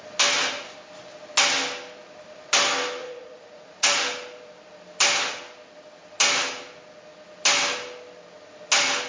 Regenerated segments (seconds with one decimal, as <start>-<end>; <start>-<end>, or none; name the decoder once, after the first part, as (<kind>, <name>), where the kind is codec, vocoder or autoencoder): 3.0-4.0 (vocoder, Vocos)

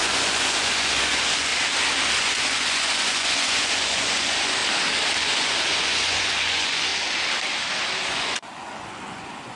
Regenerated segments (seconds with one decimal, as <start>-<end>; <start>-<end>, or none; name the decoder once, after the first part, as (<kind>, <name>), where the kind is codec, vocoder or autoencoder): 0.0-1.5 (vocoder, Vocos); 2.2-4.6; 5.2-6.9; 8.1-9.6

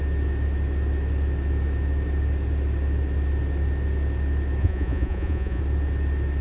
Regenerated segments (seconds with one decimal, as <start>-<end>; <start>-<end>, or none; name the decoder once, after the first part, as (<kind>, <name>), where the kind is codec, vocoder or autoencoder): 4.6-5.6 (vocoder, Vocos)

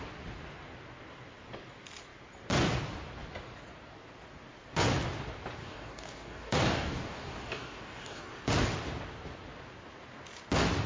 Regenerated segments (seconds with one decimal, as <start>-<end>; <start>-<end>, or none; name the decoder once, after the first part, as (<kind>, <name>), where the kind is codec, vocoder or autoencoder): 5.6-8.3 (codec, DAC)

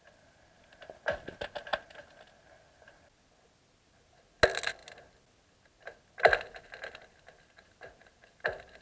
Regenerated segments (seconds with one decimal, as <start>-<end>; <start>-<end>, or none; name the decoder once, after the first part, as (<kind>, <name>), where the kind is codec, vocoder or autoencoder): none

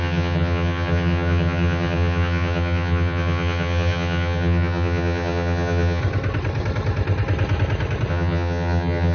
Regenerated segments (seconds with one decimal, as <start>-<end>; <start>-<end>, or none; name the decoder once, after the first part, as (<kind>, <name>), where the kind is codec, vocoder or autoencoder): 0.0-6.0 (vocoder, HiFi-GAN); 8.1-9.1

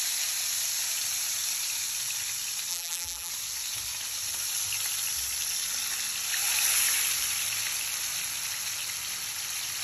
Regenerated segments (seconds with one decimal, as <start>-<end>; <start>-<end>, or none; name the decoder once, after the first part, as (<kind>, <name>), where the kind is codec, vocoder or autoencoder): 2.7-3.3 (vocoder, BigVGAN v2)